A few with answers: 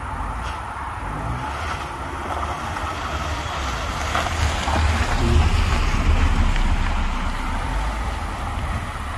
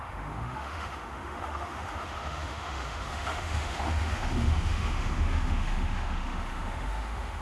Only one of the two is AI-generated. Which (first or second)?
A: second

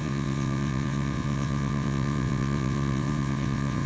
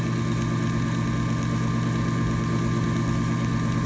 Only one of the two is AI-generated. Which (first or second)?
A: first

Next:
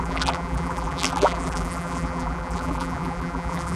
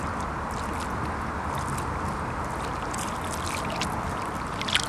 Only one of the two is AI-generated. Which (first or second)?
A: first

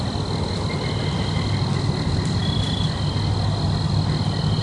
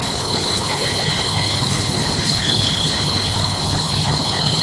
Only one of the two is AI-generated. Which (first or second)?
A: second